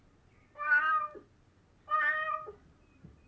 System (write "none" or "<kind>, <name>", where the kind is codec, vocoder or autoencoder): none